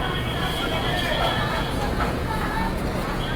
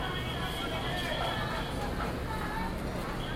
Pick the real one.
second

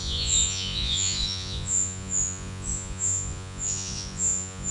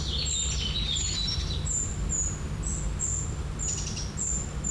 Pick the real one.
second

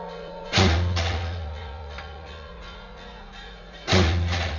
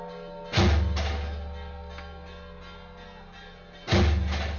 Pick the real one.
second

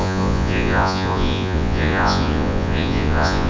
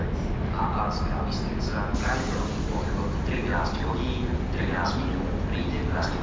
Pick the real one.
second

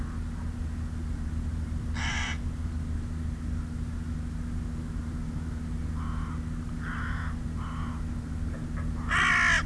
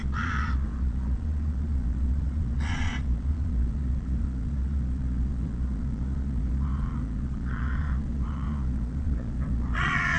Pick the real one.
first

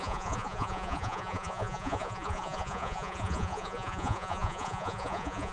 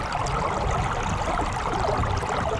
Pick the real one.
second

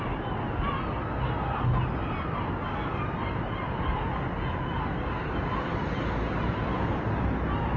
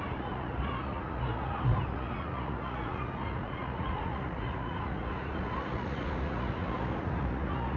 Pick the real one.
first